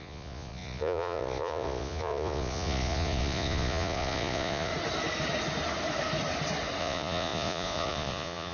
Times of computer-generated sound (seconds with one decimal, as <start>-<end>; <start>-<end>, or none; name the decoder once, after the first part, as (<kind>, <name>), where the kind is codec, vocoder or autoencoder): 0.0-4.7 (vocoder, Vocos); 6.8-8.5